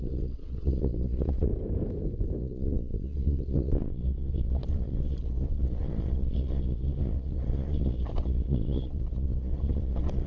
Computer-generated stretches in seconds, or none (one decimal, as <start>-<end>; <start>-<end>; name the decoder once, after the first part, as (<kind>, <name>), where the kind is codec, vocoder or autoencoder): 0.0-1.5 (vocoder, Vocos); 2.4-10.3